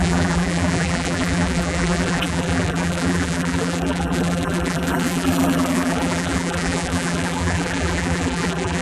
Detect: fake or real fake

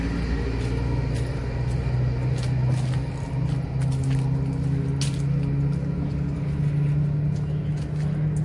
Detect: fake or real real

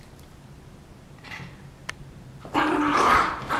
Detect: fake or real fake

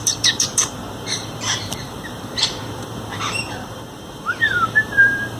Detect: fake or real fake